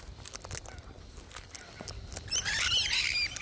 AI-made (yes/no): no